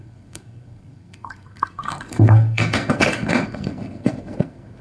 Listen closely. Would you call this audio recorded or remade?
remade